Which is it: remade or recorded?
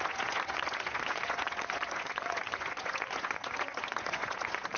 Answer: remade